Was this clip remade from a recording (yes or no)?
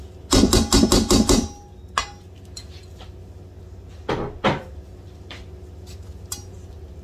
no